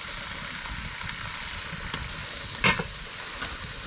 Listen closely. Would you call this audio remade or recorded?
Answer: recorded